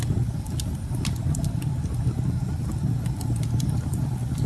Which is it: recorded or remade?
recorded